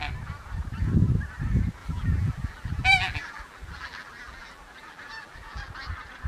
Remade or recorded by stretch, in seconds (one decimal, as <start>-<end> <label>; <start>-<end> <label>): 0.0-1.8 recorded; 1.8-5.6 remade; 5.6-6.3 recorded